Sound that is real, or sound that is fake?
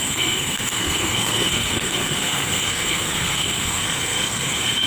fake